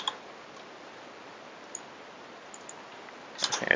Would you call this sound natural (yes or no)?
yes